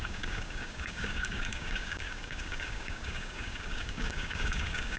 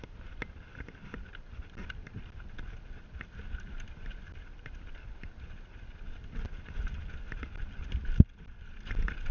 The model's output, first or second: first